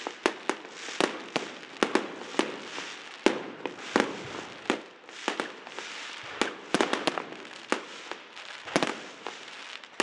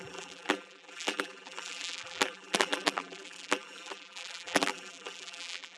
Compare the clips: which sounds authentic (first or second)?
first